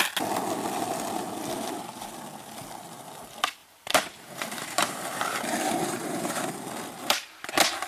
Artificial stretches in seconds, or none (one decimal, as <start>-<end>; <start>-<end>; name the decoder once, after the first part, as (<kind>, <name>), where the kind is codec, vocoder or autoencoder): 3.6-6.4 (vocoder, BigVGAN v2)